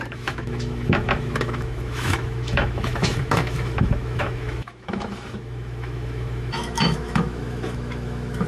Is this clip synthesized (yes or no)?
yes